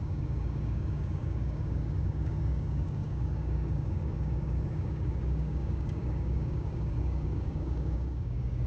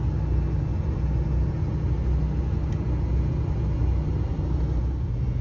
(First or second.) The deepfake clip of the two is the first